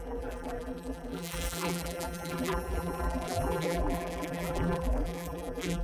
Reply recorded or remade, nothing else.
remade